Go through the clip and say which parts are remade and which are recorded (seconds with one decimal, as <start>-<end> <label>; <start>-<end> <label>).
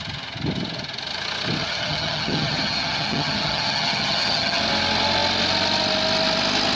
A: 0.0-1.6 recorded; 1.6-4.6 remade; 4.6-6.8 recorded